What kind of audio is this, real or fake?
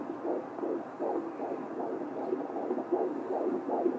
real